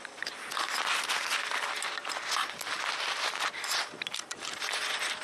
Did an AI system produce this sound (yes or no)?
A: no